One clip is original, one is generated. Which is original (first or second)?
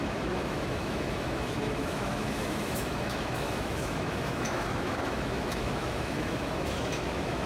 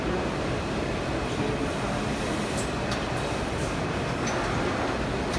second